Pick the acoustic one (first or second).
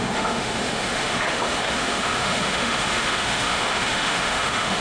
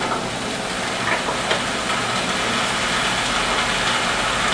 second